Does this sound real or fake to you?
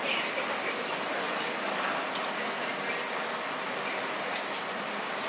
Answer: fake